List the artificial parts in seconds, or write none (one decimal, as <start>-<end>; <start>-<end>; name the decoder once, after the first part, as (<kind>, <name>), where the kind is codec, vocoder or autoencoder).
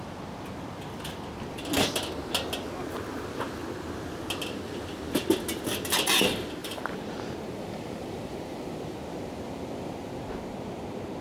6.6-8.6 (vocoder, BigVGAN v2)